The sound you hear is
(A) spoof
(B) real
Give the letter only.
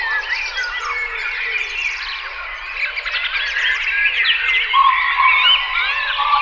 B